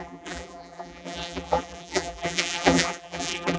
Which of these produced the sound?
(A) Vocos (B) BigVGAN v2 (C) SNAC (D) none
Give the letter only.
B